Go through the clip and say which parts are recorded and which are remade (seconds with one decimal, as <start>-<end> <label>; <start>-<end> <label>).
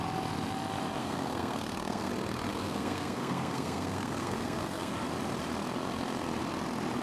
0.0-1.0 recorded; 1.0-2.1 remade; 2.1-2.5 recorded; 2.5-4.9 remade; 4.9-7.0 recorded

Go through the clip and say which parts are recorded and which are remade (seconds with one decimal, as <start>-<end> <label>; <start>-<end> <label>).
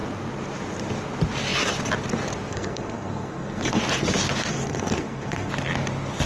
0.0-2.5 recorded; 2.5-3.8 remade; 3.8-4.5 recorded; 4.5-5.5 remade; 5.5-6.3 recorded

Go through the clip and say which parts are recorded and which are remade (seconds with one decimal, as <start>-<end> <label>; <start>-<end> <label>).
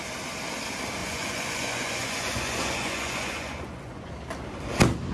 0.0-1.0 recorded; 1.0-4.1 remade; 4.1-5.1 recorded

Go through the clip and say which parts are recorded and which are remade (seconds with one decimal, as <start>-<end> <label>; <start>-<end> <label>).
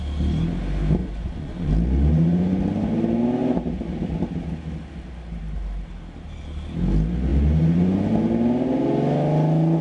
0.0-1.0 recorded; 1.0-1.7 remade; 1.7-9.8 recorded